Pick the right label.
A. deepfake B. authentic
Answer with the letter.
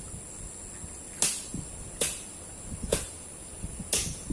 B